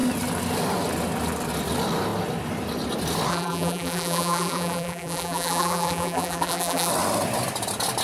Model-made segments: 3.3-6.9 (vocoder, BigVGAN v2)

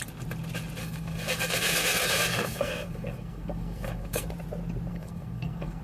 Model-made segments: 0.8-4.3 (codec, SNAC); 4.9-5.8

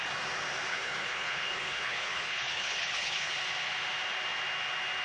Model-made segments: 0.7-3.3 (codec, HILCodec)

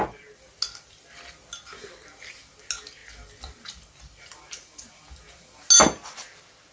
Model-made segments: none

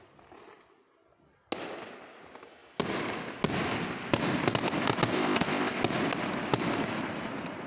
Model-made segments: 5.1-5.8 (codec, ZipCodec)

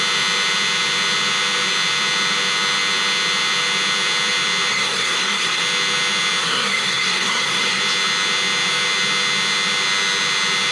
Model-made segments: 4.7-5.6 (codec, SNAC); 6.4-7.8

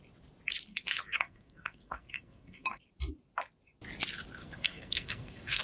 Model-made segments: 0.7-2.8 (codec, SNAC); 4.4-5.6

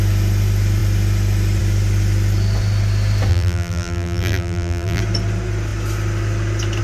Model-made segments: 3.3-5.0 (vocoder, BigVGAN v2)